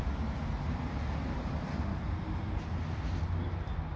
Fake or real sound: real